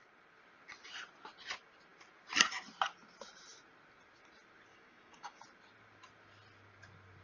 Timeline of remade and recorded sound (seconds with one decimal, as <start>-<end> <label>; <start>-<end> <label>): 0.0-4.7 recorded; 4.7-5.4 remade; 5.4-7.2 recorded